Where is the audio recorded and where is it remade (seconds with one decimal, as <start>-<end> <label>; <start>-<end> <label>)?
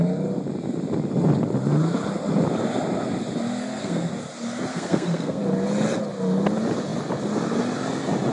0.0-3.6 recorded; 3.6-4.1 remade; 4.1-4.7 recorded; 4.7-5.4 remade; 5.4-8.3 recorded